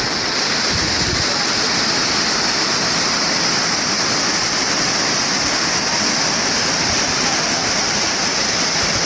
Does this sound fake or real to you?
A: real